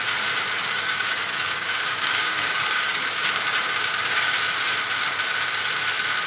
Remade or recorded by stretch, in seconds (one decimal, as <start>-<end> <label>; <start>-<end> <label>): 0.0-0.6 recorded; 0.6-4.4 remade; 4.4-6.3 recorded